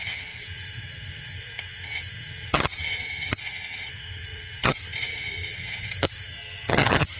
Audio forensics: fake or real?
fake